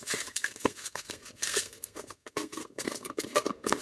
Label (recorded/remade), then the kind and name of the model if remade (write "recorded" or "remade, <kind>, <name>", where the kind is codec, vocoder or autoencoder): remade, codec, SNAC